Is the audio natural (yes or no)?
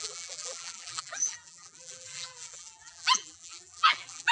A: no